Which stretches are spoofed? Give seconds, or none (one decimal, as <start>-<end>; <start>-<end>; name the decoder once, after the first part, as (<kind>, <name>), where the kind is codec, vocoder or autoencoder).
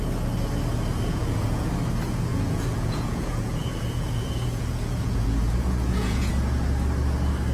1.1-1.7 (vocoder, Vocos); 2.3-6.3